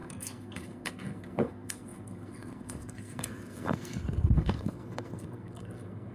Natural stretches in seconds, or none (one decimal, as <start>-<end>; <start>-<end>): none